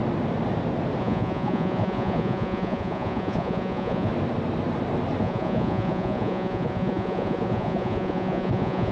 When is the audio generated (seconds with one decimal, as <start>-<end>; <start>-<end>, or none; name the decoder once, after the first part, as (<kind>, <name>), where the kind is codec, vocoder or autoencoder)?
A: 1.0-4.1 (vocoder, Vocos); 5.2-8.9